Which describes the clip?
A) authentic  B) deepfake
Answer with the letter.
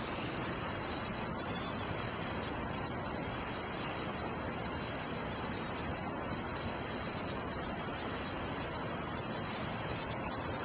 A